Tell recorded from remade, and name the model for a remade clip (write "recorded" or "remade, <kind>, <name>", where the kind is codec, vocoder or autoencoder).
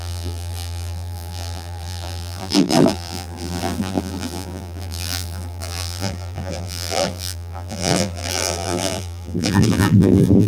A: remade, vocoder, BigVGAN v2